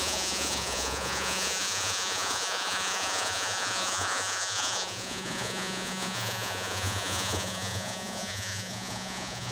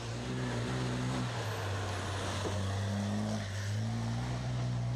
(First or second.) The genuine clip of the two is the second